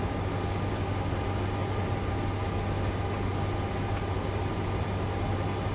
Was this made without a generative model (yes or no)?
yes